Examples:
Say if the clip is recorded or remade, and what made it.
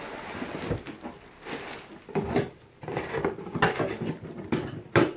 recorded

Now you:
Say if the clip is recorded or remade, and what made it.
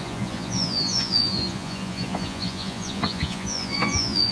remade, vocoder, Vocos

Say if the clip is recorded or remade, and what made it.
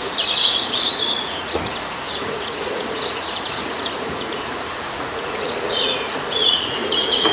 remade, vocoder, Vocos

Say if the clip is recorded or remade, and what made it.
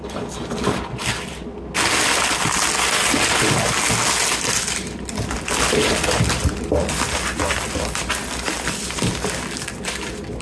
recorded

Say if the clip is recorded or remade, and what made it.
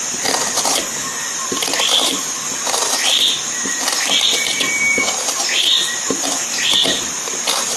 recorded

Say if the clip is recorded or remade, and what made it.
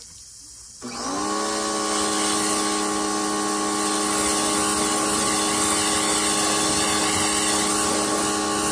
recorded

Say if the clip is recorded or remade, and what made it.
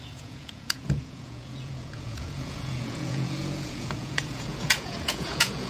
remade, vocoder, Vocos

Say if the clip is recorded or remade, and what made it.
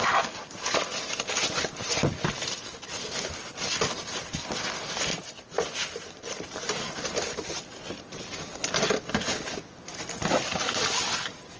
recorded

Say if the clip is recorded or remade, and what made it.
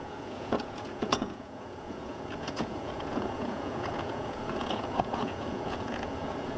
remade, vocoder, Vocos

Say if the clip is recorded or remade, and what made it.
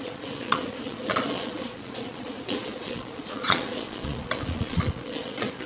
remade, vocoder, Vocos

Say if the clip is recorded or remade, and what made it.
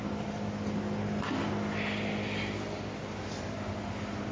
recorded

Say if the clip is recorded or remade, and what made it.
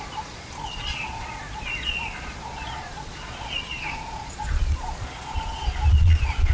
remade, vocoder, Vocos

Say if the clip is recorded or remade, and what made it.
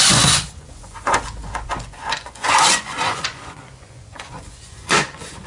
remade, vocoder, Vocos